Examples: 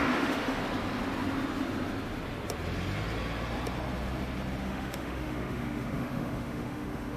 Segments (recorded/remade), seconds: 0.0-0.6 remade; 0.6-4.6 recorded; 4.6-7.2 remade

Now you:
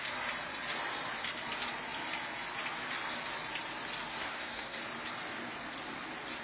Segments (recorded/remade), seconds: 0.0-4.1 recorded; 4.1-4.8 remade; 4.8-6.4 recorded

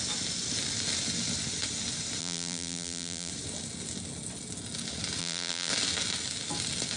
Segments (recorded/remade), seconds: 0.0-2.2 recorded; 2.2-3.3 remade; 3.3-5.2 recorded; 5.2-5.7 remade; 5.7-7.0 recorded

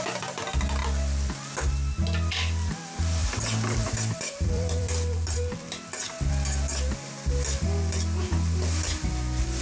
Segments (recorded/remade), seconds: 0.0-3.2 recorded; 3.2-6.3 remade; 6.3-9.6 recorded

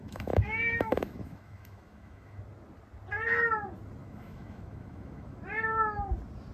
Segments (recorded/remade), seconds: 0.0-2.4 remade; 2.4-4.0 recorded; 4.0-5.4 remade; 5.4-6.5 recorded